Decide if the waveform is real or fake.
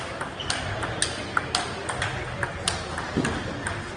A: real